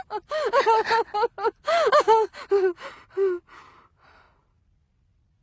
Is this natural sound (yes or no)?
yes